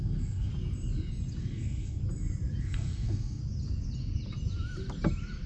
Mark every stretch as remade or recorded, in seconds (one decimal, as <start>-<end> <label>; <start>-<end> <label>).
0.0-0.5 remade; 0.5-1.4 recorded; 1.4-2.0 remade; 2.0-2.6 recorded; 2.6-3.4 remade; 3.4-5.5 recorded